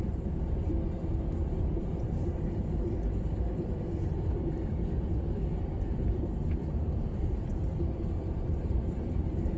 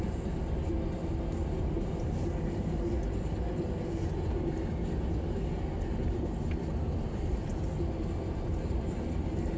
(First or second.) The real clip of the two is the second